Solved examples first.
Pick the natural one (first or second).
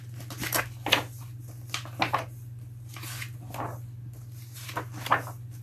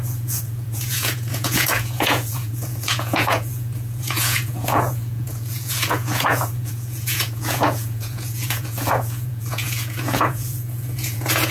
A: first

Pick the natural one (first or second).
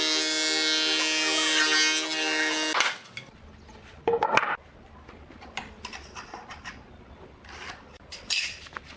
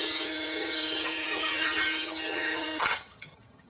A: first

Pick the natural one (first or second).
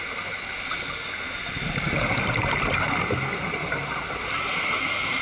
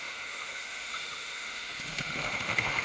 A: first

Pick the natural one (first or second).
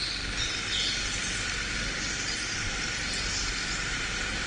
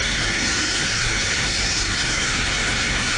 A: first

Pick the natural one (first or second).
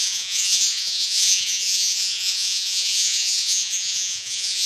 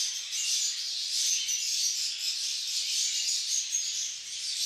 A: second